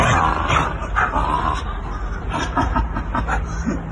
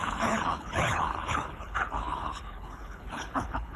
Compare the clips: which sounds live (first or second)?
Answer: first